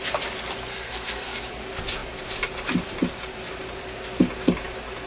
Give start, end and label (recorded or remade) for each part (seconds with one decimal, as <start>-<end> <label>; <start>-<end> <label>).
0.0-0.7 recorded; 0.7-1.4 remade; 1.4-5.1 recorded